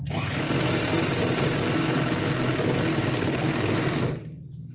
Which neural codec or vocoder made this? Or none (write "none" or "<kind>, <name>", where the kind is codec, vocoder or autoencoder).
none